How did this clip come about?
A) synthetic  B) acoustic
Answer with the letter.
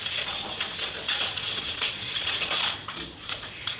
A